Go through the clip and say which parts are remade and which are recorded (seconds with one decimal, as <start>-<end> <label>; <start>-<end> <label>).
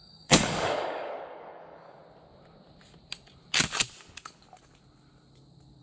0.0-2.0 remade; 2.0-5.8 recorded